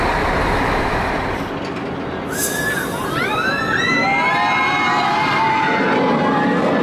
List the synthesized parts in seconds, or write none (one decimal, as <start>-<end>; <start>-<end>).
0.4-1.1